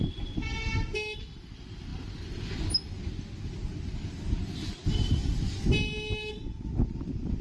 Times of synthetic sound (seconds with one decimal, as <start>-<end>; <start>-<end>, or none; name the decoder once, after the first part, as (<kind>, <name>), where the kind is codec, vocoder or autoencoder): none